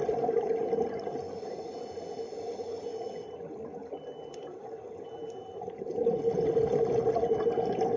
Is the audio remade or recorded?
recorded